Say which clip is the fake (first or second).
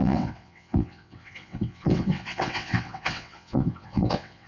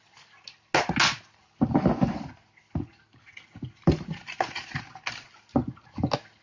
first